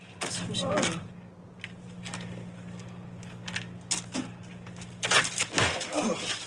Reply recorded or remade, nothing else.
recorded